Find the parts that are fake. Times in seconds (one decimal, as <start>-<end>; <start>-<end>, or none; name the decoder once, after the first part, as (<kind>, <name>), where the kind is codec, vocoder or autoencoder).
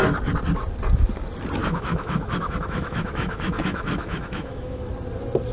1.6-4.9 (autoencoder, DAC-VAE)